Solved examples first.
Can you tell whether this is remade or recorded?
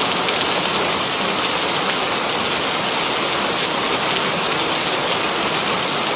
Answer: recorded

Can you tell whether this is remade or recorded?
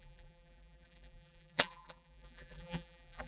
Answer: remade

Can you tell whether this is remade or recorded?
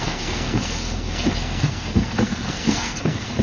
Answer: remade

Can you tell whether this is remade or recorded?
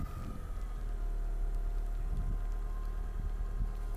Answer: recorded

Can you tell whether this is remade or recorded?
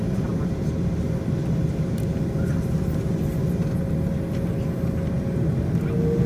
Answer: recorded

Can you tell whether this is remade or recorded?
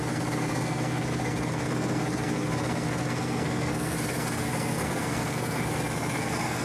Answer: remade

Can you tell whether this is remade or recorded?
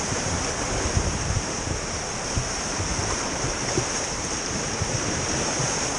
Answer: remade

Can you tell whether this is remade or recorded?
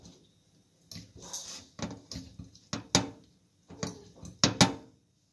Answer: recorded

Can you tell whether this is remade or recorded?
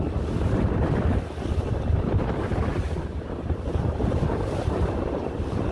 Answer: remade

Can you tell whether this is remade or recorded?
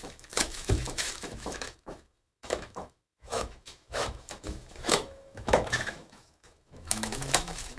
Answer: remade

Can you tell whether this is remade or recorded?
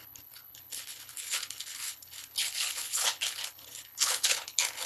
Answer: remade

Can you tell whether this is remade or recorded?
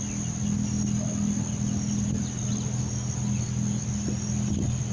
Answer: recorded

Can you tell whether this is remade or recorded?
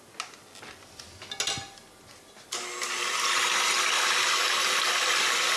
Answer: recorded